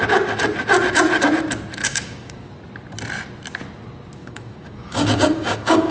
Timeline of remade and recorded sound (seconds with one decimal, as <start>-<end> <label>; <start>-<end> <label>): 0.0-1.8 recorded; 1.8-2.5 remade; 2.5-4.2 recorded; 4.2-5.9 remade